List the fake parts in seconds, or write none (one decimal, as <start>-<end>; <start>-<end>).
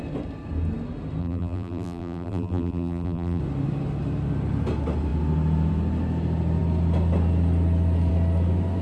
1.2-3.4